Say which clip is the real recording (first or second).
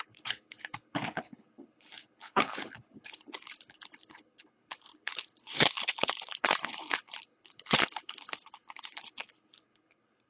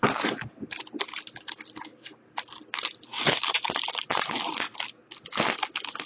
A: second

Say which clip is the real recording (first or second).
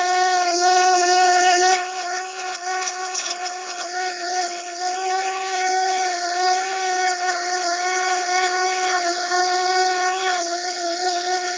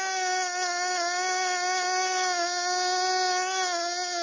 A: second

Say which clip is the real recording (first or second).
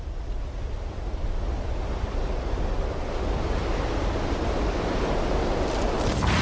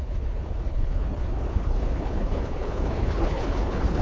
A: first